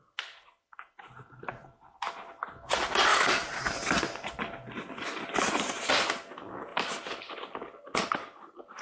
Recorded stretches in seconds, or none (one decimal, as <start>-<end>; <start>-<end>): 0.0-3.1; 5.9-6.7; 7.2-8.8